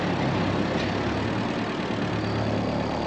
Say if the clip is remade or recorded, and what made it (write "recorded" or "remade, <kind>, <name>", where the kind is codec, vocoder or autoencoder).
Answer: recorded